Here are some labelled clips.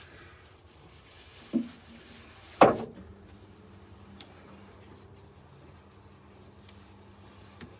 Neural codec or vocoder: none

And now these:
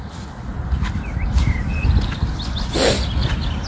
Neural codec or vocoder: none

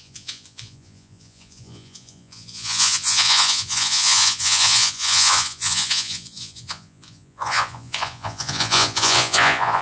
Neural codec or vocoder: vocoder, Vocos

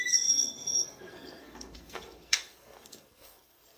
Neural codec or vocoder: codec, SNAC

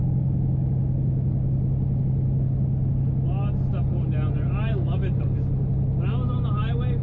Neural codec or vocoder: none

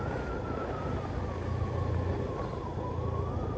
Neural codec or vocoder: none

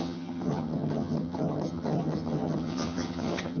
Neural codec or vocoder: vocoder, HiFi-GAN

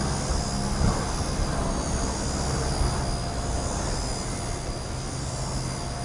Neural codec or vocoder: none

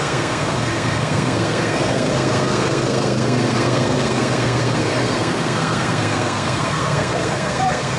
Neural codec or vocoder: codec, SNAC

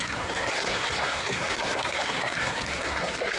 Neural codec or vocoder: codec, SNAC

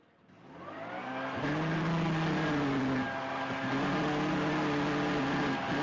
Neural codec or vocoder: none